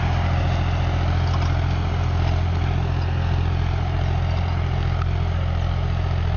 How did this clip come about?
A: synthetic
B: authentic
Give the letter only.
B